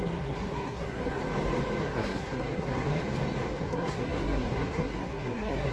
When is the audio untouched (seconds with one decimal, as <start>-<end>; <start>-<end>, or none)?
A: 1.2-1.8; 3.0-3.6